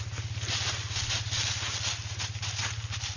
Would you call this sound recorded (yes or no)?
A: yes